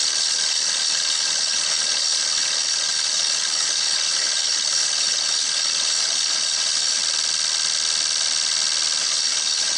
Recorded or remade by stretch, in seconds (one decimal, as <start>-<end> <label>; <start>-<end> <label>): 0.0-7.0 remade; 7.0-9.0 recorded; 9.0-9.8 remade